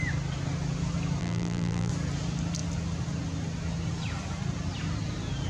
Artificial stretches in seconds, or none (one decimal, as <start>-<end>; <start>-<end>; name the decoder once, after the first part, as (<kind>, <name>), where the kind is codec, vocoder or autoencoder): 1.2-1.9 (vocoder, BigVGAN v2)